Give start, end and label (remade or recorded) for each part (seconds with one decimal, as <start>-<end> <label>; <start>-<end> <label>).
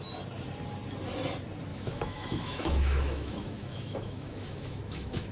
0.0-1.7 recorded; 1.7-5.3 remade